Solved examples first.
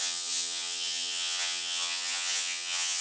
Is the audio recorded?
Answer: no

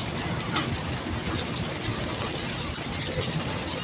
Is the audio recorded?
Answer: yes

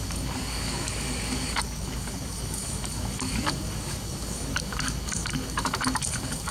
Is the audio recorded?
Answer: no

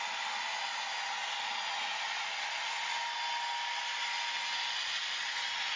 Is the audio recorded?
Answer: yes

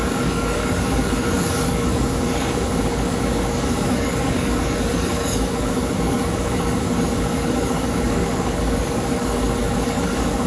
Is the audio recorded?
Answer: no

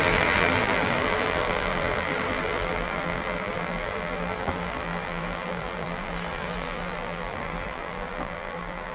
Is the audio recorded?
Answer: no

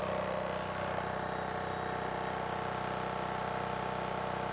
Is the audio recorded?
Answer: yes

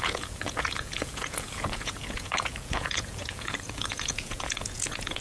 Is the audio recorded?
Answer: no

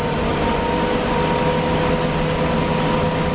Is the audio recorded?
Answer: yes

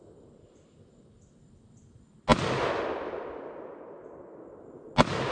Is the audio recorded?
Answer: yes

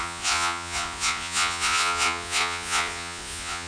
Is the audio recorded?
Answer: no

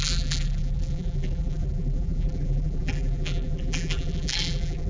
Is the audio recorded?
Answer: no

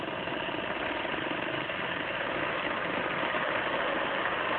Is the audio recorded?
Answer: yes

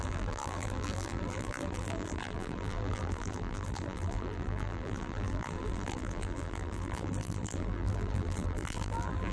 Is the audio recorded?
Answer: no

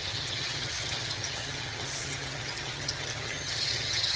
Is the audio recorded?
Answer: no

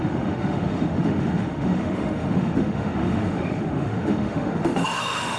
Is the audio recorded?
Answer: no